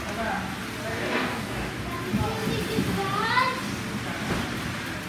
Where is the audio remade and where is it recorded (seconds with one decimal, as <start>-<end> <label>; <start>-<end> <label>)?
0.0-0.9 recorded; 0.9-1.7 remade; 1.7-5.1 recorded